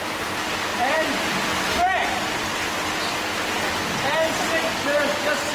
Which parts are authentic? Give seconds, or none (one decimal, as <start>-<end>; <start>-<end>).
0.0-0.7; 2.7-5.5